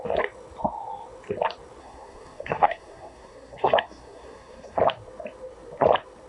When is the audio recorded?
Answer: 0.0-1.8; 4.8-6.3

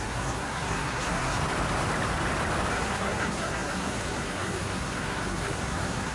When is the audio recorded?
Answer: 1.4-2.7

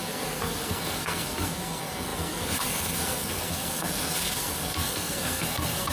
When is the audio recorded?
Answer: none

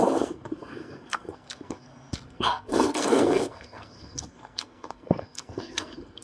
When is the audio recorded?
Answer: none

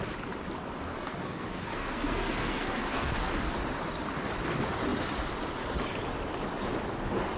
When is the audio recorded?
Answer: 0.0-0.9; 3.3-7.4